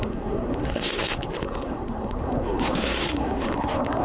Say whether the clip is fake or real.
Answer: fake